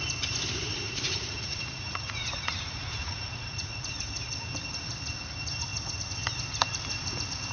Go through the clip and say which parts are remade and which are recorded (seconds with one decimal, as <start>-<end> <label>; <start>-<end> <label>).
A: 0.0-0.7 recorded; 0.7-4.3 remade; 4.3-7.5 recorded